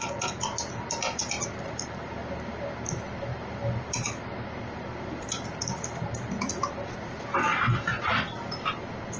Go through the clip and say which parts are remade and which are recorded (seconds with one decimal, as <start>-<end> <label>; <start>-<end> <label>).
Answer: 0.0-7.5 recorded; 7.5-8.7 remade; 8.7-9.2 recorded